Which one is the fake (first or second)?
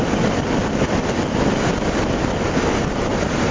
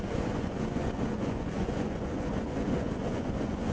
second